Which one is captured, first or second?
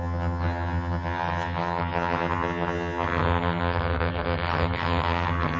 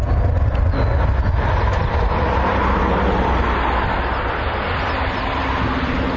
second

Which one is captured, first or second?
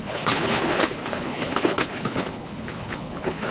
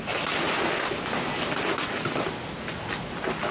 second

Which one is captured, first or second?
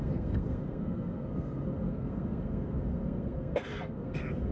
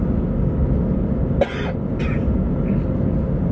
second